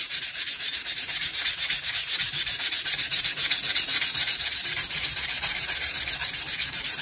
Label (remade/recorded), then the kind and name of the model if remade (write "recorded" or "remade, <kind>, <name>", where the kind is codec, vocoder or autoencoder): remade, vocoder, BigVGAN v2